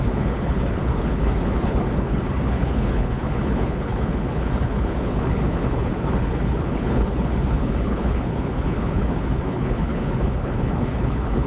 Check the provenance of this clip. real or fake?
fake